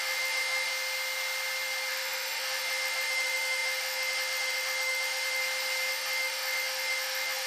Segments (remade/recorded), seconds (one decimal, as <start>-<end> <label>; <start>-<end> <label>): 0.0-0.7 remade; 0.7-1.9 recorded; 1.9-5.4 remade; 5.4-5.9 recorded; 5.9-7.5 remade